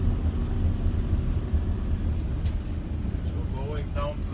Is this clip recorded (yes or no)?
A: yes